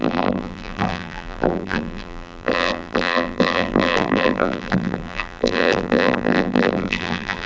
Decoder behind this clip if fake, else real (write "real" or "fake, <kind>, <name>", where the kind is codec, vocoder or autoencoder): fake, vocoder, BigVGAN v2